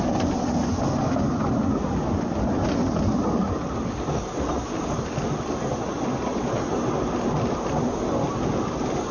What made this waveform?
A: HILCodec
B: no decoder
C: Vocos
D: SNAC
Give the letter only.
B